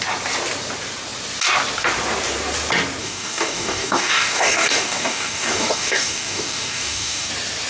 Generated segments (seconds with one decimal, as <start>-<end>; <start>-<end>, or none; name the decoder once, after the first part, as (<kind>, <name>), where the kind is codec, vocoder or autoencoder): 3.0-7.3 (codec, DAC)

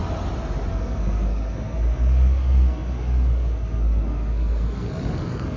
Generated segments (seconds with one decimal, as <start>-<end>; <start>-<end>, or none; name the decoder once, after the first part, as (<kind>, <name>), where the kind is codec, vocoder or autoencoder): 0.7-5.6 (codec, SNAC)

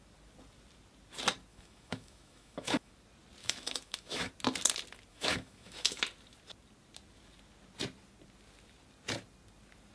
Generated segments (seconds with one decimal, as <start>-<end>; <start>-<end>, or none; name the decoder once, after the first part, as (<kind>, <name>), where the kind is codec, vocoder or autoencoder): 1.5-2.9 (autoencoder, DAC-VAE); 3.4-4.3; 5.1-6.0

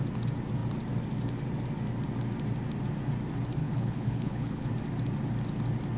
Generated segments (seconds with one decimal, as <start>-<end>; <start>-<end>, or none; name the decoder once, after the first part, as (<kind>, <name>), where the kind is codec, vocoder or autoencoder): 3.6-4.7 (codec, HILCodec)

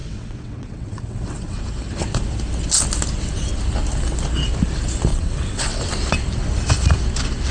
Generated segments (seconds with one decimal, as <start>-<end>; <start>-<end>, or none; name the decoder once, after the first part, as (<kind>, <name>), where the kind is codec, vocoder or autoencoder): 0.0-1.6 (vocoder, WaveNeXt); 5.1-5.8

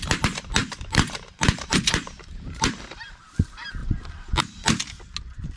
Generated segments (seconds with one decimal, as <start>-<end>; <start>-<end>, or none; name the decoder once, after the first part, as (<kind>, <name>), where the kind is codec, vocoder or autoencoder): 0.6-3.2 (vocoder, BigVGAN v2); 3.8-4.4